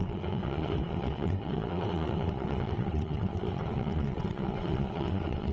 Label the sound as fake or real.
fake